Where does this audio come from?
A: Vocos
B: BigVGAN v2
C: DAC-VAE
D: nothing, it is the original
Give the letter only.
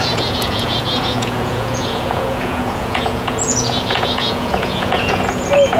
A